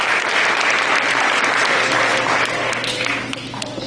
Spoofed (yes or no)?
no